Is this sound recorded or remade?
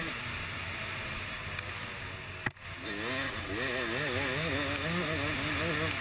recorded